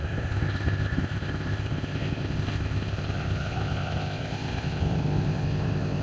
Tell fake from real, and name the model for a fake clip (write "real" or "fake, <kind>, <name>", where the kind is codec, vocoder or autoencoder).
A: fake, codec, ZipCodec